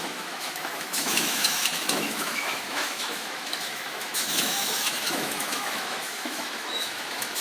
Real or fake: fake